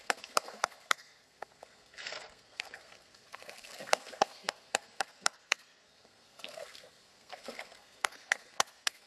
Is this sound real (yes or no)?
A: no